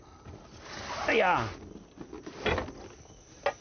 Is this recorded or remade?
recorded